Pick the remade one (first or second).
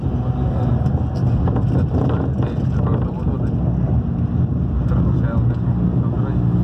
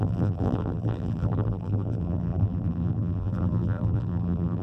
second